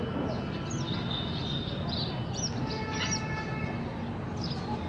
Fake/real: real